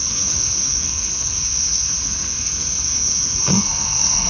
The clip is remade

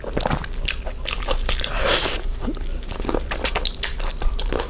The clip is recorded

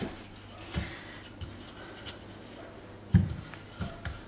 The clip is recorded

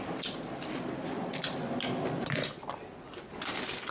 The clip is recorded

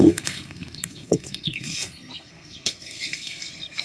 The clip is remade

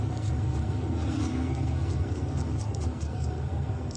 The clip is remade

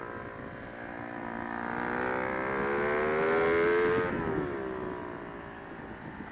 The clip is recorded